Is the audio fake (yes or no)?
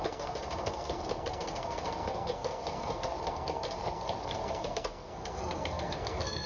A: yes